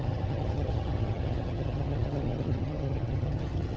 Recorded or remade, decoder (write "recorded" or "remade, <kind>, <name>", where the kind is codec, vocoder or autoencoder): remade, vocoder, HiFi-GAN